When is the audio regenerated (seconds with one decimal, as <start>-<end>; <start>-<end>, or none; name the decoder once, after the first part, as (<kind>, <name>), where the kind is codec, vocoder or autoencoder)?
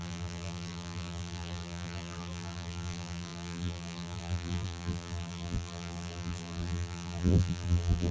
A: 0.0-8.1 (vocoder, BigVGAN v2)